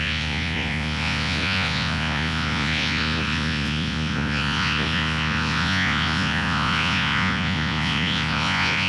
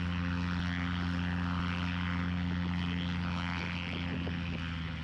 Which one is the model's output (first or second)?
first